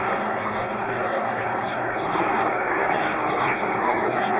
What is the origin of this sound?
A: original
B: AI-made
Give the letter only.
B